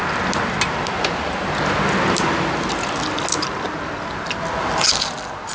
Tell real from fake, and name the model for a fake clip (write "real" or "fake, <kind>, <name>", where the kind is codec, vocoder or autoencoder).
real